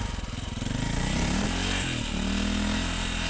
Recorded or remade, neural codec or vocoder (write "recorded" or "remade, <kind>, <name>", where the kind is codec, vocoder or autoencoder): recorded